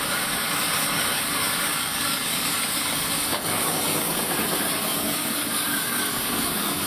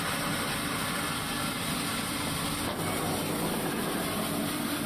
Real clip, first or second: second